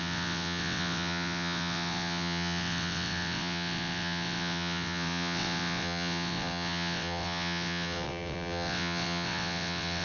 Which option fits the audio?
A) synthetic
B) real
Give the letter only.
A